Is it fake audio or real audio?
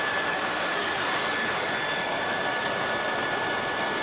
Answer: real